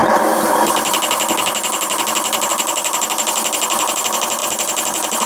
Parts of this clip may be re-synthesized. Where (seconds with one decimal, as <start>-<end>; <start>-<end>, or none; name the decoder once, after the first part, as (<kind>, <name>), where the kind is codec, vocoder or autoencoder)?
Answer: none